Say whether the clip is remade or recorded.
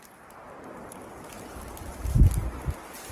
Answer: recorded